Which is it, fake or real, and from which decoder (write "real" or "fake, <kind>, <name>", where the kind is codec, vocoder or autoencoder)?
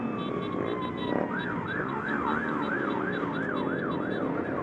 real